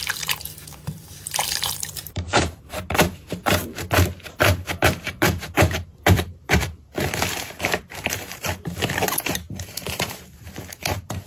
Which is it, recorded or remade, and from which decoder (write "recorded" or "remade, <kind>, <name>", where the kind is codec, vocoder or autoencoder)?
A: remade, vocoder, BigVGAN v2